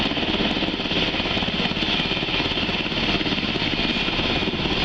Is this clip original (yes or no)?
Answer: yes